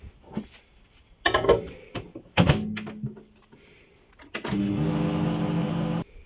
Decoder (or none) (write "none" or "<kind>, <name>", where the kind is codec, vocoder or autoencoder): none